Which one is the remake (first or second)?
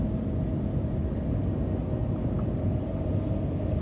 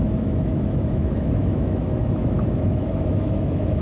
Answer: second